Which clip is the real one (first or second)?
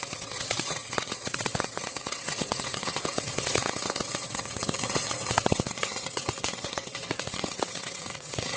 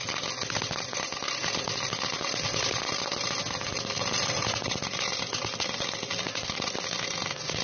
second